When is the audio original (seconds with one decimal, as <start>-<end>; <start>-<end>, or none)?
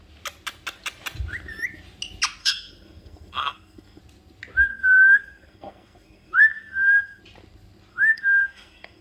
0.0-2.4; 4.0-4.7; 7.2-7.9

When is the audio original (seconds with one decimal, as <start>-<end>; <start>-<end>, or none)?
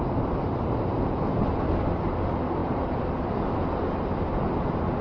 0.0-5.0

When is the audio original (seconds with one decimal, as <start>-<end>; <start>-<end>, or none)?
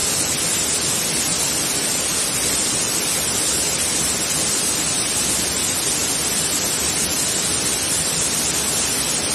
0.0-9.3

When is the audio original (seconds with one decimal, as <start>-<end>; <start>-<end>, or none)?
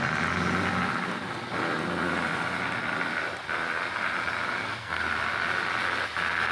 0.0-4.6; 5.1-6.5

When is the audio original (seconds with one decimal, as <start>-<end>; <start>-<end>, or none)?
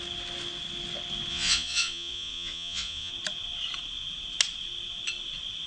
0.0-1.3; 3.1-5.7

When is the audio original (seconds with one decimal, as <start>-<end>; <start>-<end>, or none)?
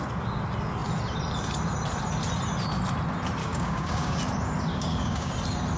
0.0-3.4; 4.2-4.7; 5.3-5.8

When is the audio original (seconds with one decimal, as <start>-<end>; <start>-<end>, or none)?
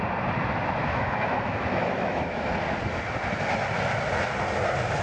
0.0-0.8; 2.5-5.0